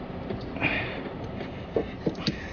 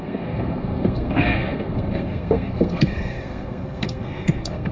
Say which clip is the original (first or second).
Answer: first